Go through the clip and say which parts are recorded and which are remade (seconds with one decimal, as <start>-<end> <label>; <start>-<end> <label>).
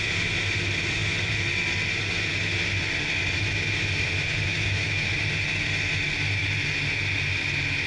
0.0-4.5 recorded; 4.5-5.1 remade; 5.1-7.9 recorded